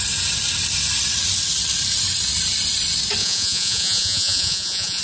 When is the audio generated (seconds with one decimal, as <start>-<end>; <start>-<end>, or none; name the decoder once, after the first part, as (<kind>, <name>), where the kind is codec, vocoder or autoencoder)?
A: 3.2-5.0 (vocoder, Vocos)